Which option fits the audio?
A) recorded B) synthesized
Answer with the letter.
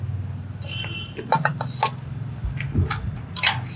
A